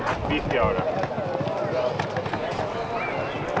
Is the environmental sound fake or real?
real